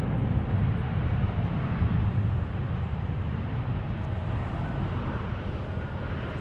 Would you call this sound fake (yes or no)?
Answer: no